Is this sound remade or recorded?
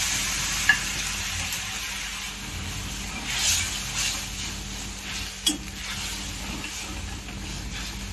recorded